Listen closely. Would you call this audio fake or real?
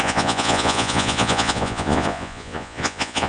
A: fake